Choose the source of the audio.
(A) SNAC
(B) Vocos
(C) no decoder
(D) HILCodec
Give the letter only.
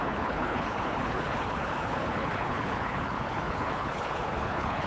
D